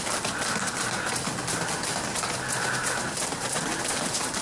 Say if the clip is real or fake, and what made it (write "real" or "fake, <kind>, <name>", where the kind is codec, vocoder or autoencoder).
real